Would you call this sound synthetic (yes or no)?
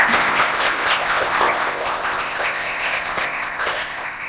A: yes